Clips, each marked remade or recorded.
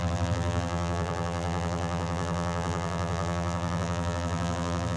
remade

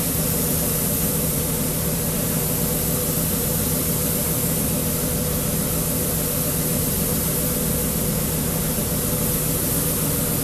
recorded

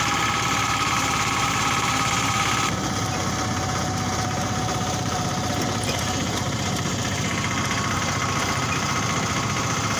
remade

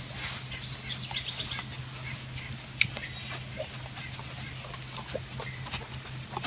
recorded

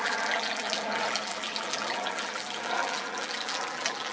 remade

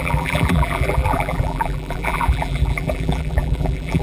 remade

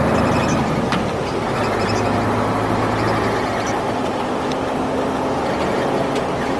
recorded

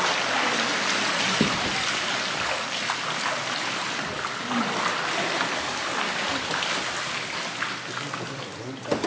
recorded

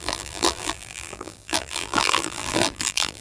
remade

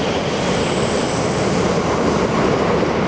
remade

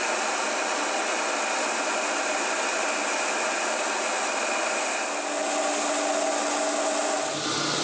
recorded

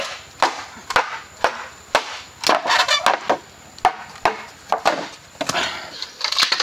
recorded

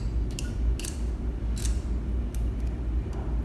recorded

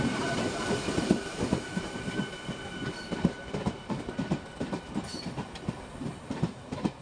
remade